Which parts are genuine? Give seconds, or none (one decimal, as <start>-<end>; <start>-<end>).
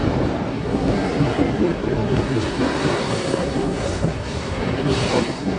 0.0-0.5